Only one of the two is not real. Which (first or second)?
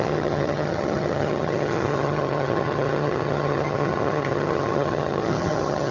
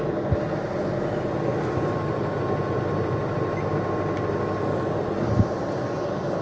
first